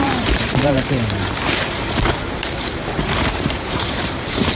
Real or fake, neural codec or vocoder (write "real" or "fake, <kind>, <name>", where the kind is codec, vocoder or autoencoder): fake, vocoder, BigVGAN v2